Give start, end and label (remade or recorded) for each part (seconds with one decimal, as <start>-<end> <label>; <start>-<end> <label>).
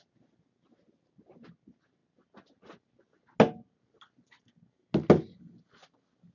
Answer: 0.0-6.3 recorded